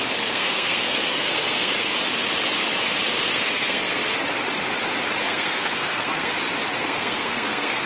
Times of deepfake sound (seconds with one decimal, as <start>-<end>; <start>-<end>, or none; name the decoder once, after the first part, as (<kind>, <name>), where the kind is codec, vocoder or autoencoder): 0.0-1.9 (codec, SNAC); 3.3-4.0; 5.2-6.3; 6.8-7.9